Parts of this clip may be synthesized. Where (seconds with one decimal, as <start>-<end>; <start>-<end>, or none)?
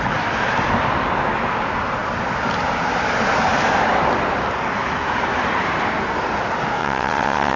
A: 6.8-7.6